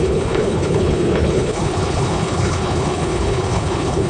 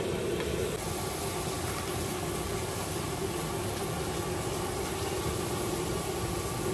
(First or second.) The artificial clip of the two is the first